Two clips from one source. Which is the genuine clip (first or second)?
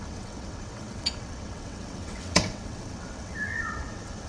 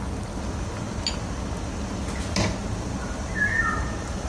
second